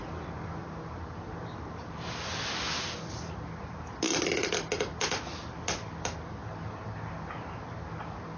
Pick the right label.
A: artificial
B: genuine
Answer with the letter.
B